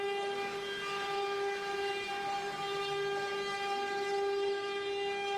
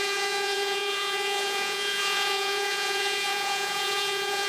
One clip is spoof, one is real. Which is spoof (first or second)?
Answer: second